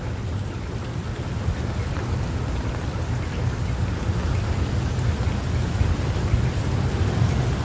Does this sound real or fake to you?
real